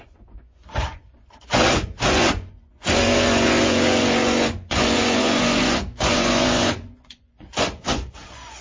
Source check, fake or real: fake